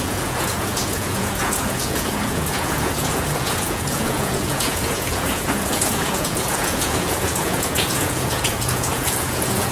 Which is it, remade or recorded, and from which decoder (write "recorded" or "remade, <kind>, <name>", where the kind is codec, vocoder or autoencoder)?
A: remade, vocoder, Vocos